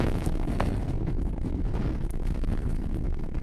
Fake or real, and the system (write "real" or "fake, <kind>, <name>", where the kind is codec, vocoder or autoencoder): fake, codec, SNAC